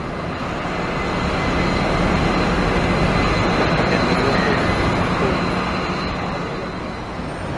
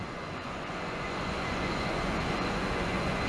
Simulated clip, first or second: second